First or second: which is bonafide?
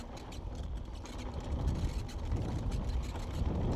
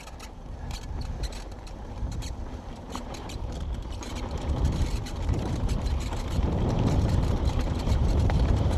first